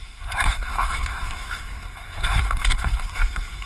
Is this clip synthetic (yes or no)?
yes